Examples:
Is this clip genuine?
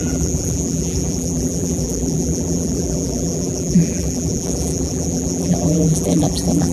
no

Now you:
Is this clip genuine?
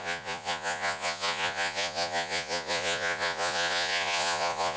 no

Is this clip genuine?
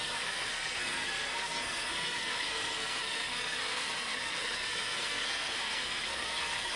no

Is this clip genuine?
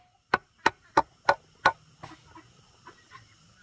yes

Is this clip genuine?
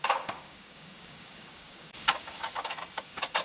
no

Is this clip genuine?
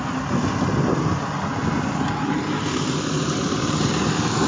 yes